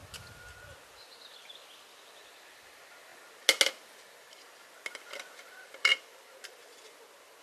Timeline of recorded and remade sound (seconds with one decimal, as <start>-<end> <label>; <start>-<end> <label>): 0.0-7.4 recorded